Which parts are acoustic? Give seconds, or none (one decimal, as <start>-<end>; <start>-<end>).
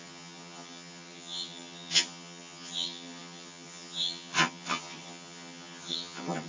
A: none